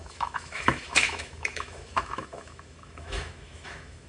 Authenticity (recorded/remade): remade